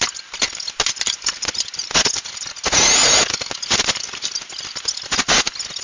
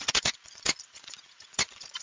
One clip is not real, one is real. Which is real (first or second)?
first